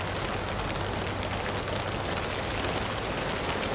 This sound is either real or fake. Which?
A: real